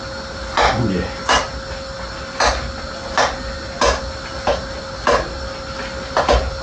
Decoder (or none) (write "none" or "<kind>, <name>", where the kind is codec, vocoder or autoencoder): none